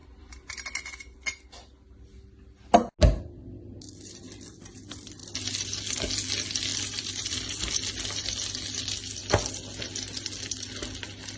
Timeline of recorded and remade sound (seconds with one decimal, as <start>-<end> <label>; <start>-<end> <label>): 0.0-0.6 remade; 0.6-6.7 recorded; 6.7-7.7 remade; 7.7-11.4 recorded